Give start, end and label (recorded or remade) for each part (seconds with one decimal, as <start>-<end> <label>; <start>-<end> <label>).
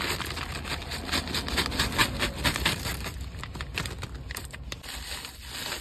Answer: 0.0-5.8 recorded